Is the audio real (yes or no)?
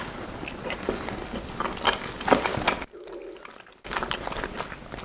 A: yes